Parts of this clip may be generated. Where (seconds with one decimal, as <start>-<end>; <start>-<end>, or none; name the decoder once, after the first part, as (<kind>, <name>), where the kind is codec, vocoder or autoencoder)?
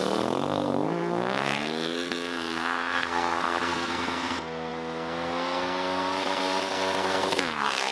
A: 0.0-7.9 (codec, SNAC)